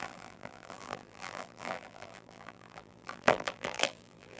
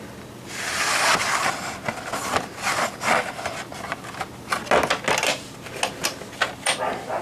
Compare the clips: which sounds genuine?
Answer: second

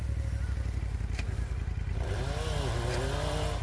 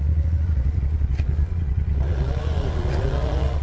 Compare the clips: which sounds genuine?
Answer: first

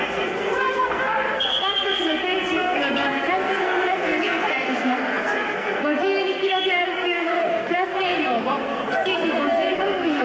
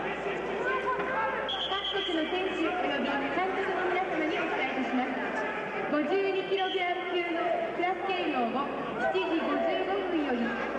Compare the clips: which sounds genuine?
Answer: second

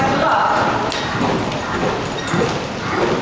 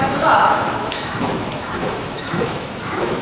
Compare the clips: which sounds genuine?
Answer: first